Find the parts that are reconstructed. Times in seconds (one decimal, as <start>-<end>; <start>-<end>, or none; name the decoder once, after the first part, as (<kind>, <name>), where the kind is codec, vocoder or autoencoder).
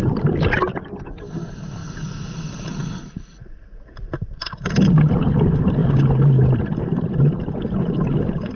none